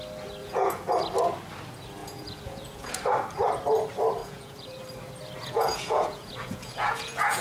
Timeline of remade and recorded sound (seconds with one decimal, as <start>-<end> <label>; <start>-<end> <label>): 0.0-0.4 recorded; 0.4-0.9 remade; 0.9-2.0 recorded; 2.0-3.0 remade; 3.0-4.2 recorded; 4.2-4.8 remade; 4.8-5.4 recorded; 5.4-7.4 remade